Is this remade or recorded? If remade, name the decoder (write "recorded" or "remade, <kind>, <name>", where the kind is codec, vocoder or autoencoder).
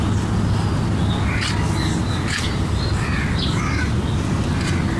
recorded